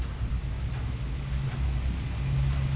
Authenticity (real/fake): real